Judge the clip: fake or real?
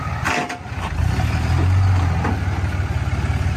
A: real